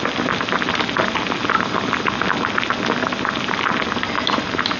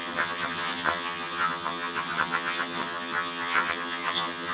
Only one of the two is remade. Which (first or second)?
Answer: second